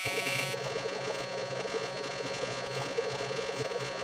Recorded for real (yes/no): no